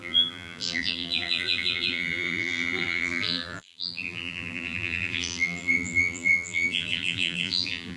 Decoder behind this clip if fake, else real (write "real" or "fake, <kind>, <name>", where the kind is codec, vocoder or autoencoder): fake, vocoder, BigVGAN v2